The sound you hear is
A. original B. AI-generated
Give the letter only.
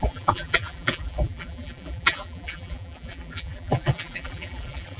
B